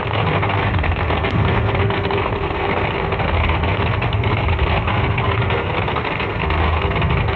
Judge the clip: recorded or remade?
remade